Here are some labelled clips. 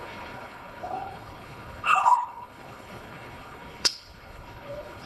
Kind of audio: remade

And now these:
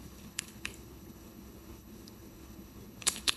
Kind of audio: remade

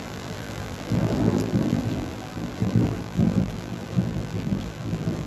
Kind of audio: remade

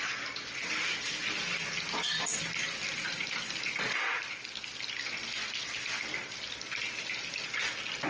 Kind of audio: recorded